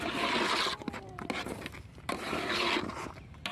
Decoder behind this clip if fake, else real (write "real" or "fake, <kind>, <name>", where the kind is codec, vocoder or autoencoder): real